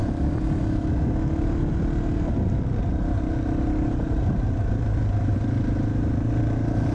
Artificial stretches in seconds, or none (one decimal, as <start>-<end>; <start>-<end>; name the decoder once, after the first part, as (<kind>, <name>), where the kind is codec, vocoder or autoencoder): none